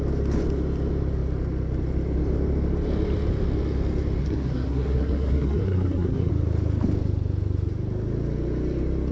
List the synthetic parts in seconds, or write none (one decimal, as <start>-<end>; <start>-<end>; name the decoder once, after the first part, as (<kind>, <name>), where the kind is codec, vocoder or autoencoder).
4.2-6.3 (codec, SNAC)